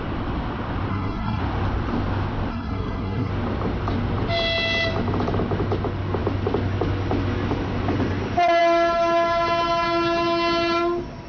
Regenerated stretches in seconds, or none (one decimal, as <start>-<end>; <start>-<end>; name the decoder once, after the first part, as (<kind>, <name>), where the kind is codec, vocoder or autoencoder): 0.9-1.4 (codec, SNAC); 2.5-3.3